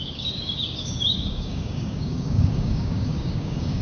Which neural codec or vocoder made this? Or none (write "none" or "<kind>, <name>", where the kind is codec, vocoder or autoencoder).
codec, DAC